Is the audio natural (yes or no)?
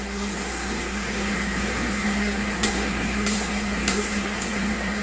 no